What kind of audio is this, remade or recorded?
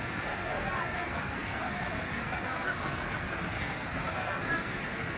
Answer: remade